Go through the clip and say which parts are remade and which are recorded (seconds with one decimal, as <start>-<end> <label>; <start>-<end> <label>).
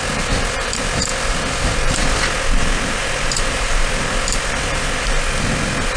0.0-6.0 recorded